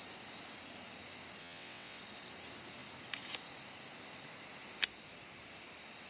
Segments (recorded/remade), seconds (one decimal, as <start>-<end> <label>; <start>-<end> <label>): 0.0-1.4 recorded; 1.4-2.0 remade; 2.0-6.1 recorded

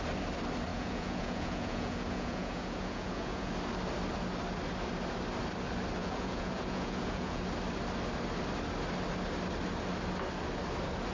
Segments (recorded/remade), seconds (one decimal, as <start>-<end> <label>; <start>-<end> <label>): 0.0-0.7 recorded; 0.7-3.5 remade; 3.5-6.0 recorded; 6.0-7.4 remade; 7.4-11.1 recorded

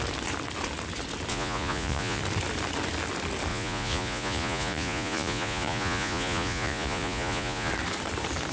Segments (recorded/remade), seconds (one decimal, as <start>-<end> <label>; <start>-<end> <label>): 0.0-1.3 recorded; 1.3-2.2 remade; 2.2-3.5 recorded; 3.5-7.7 remade; 7.7-8.5 recorded

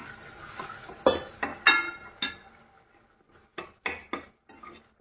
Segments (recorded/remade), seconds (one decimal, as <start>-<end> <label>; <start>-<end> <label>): 0.0-5.0 recorded

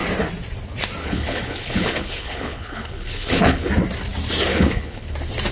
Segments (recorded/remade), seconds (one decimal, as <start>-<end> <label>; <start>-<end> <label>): 0.0-1.0 recorded; 1.0-3.7 remade; 3.7-4.5 recorded; 4.5-5.1 remade; 5.1-5.5 recorded

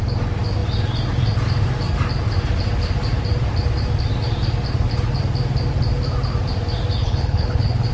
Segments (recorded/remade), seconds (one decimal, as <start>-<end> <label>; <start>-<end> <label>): 0.0-7.0 recorded; 7.0-7.9 remade

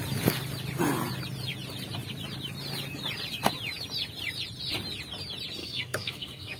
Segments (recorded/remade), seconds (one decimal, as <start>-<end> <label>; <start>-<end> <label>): 0.0-5.6 recorded; 5.6-6.6 remade